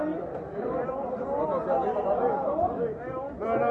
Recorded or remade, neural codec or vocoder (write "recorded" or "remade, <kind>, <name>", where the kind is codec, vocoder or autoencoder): remade, vocoder, BigVGAN v2